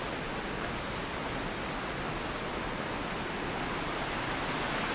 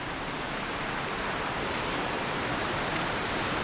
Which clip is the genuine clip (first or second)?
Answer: first